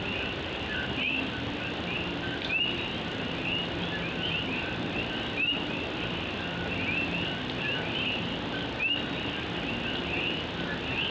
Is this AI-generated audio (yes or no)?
no